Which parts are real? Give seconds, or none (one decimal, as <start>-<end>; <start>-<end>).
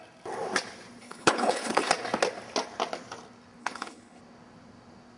0.0-1.0; 1.9-3.6; 4.2-5.2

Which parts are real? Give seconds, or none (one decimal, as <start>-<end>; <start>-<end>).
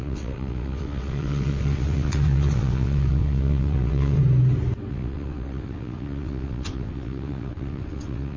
4.2-4.9